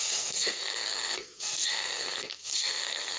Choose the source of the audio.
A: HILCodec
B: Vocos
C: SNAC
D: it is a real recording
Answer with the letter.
C